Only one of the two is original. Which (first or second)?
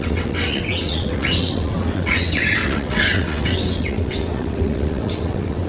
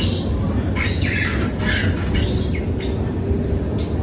second